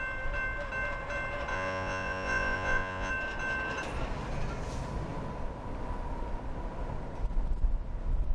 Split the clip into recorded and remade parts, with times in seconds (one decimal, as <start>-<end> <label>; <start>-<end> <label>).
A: 0.0-1.5 recorded; 1.5-3.1 remade; 3.1-8.3 recorded